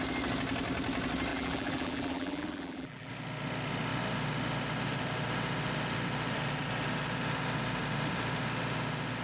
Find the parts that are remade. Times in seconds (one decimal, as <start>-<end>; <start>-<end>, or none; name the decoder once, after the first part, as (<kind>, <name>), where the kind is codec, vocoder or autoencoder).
1.3-3.1 (vocoder, BigVGAN v2)